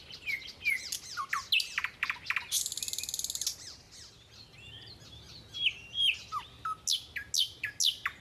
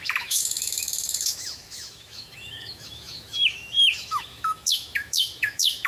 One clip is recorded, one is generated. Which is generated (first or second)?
second